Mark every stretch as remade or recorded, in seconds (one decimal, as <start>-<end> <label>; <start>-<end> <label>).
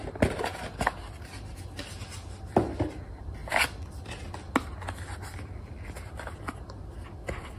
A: 0.0-7.6 recorded